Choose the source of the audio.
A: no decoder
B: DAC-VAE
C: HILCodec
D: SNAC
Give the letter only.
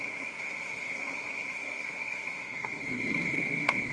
D